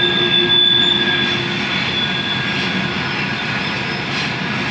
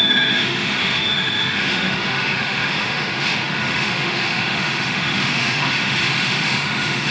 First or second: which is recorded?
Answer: first